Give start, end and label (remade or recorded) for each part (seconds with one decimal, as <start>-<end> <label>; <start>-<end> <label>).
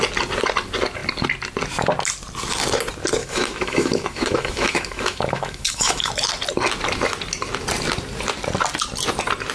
0.0-3.2 recorded; 3.2-6.1 remade; 6.1-9.5 recorded